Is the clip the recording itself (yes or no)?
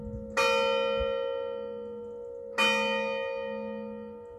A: yes